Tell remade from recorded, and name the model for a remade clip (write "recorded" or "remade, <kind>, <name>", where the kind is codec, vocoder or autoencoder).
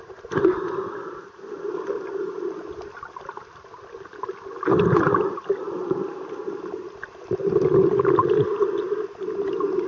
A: recorded